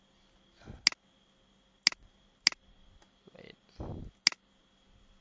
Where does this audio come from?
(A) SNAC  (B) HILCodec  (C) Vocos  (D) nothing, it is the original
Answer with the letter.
D